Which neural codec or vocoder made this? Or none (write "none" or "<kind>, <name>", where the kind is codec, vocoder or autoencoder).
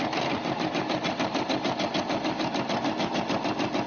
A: none